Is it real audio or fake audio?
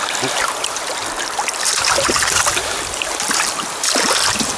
real